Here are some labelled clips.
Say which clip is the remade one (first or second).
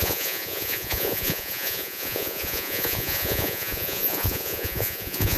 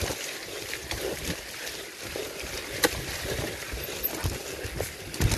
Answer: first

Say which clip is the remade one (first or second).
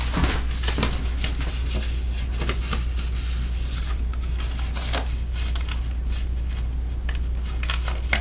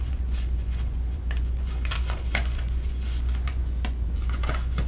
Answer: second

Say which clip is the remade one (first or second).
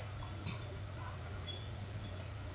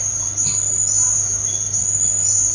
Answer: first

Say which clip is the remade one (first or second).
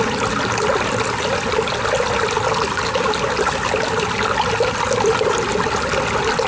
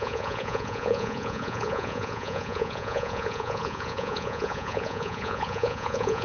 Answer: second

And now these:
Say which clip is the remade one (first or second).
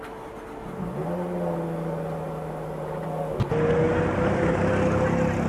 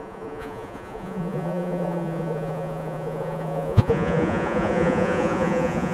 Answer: second